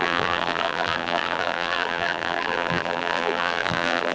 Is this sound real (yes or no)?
no